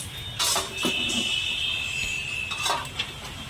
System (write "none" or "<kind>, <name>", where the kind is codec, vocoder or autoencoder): none